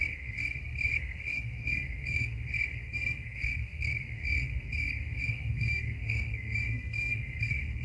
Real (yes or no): no